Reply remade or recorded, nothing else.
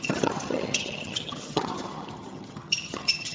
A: remade